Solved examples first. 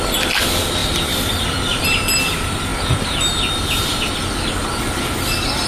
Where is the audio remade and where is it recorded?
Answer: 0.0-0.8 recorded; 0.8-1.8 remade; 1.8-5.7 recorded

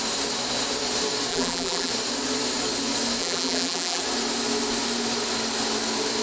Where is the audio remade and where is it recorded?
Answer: 0.0-1.3 recorded; 1.3-1.9 remade; 1.9-3.2 recorded; 3.2-4.0 remade; 4.0-6.2 recorded

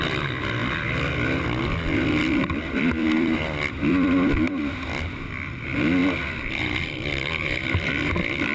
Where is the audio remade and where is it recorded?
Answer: 0.0-6.0 remade; 6.0-6.8 recorded; 6.8-8.5 remade